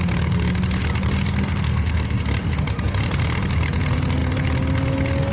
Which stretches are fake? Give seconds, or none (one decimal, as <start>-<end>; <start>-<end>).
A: 1.5-2.2